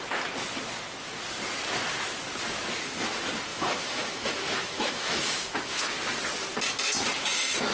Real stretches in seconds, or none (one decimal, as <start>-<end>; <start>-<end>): 0.0-3.5; 5.8-7.7

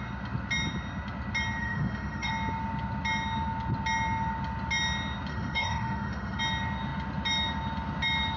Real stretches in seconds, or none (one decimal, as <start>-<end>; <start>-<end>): 0.0-1.6; 2.3-5.3; 6.4-8.4

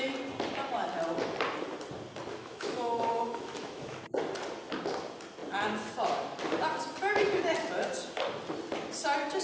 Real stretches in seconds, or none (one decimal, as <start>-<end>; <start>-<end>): 0.0-2.4; 4.0-9.4